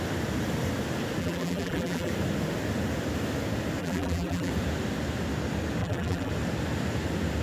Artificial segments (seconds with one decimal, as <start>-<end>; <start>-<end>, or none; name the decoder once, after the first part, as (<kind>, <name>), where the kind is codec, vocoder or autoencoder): 1.2-2.1 (vocoder, BigVGAN v2); 3.8-4.5; 5.8-6.3